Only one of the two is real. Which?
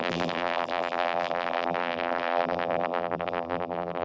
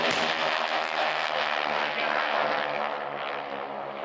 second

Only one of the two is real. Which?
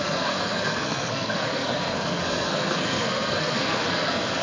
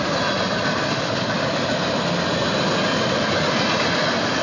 second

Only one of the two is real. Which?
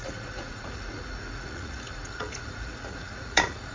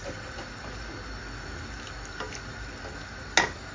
second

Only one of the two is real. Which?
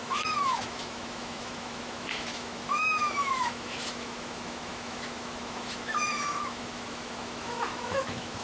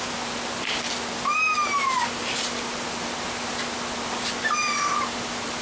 second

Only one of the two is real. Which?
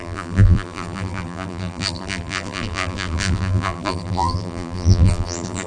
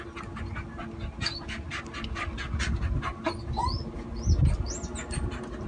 second